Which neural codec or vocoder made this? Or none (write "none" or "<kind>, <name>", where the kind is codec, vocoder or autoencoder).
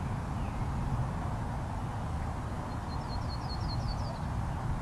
none